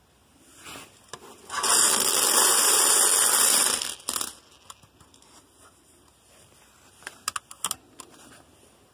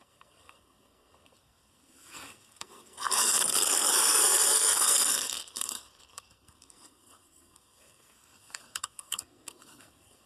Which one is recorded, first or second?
first